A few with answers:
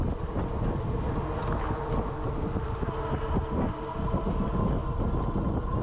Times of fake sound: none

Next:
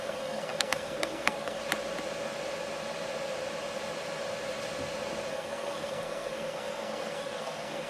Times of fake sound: 0.0-1.6 (codec, SNAC); 5.3-7.9

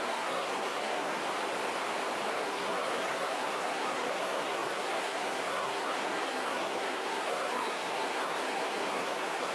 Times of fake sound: 0.0-1.2 (codec, SNAC); 2.3-9.5